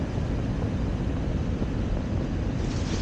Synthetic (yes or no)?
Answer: no